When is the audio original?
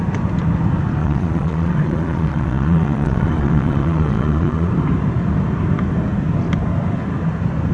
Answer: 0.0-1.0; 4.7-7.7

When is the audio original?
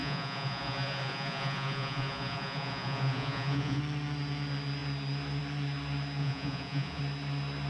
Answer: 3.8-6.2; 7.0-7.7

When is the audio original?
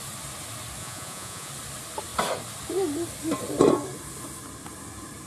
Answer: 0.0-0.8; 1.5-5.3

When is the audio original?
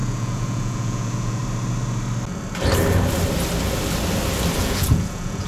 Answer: 1.4-4.6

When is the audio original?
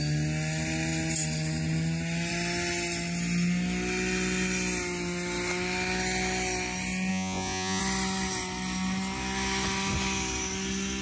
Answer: 0.0-7.1; 7.8-11.0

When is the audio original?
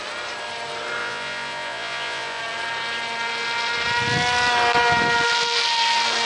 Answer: 0.0-1.0; 2.4-6.2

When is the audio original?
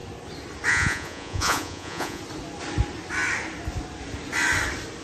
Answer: 0.0-0.7; 2.2-5.0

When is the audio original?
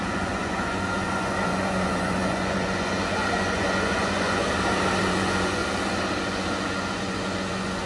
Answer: 4.4-5.0; 5.6-6.2